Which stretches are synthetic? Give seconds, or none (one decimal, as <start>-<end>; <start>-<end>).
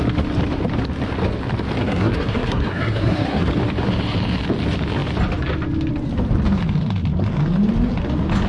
1.8-3.5